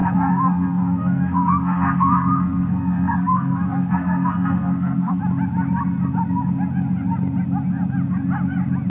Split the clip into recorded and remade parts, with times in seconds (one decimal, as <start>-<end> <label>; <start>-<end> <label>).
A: 0.0-5.2 remade; 5.2-8.9 recorded